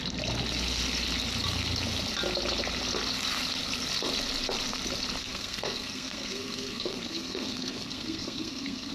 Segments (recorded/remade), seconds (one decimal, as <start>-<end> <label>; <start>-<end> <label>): 0.0-5.2 recorded; 5.2-8.9 remade